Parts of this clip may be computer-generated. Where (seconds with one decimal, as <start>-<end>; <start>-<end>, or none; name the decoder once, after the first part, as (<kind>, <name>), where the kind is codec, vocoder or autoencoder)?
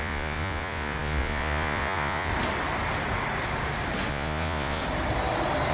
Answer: 0.0-2.3 (vocoder, Vocos); 4.1-4.8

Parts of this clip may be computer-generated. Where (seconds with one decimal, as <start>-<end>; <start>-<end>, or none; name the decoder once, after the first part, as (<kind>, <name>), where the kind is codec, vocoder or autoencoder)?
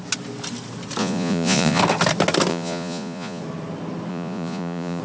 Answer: 1.0-1.8 (vocoder, Vocos); 2.5-3.4; 4.1-5.0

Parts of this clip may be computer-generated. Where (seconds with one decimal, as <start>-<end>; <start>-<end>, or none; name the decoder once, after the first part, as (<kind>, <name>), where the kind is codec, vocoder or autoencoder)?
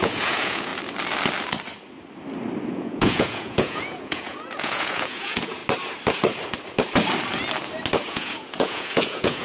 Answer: 0.0-0.7 (vocoder, Vocos); 2.7-5.6; 8.1-9.4